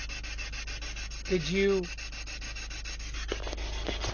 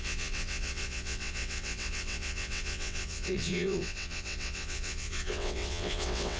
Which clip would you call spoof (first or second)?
second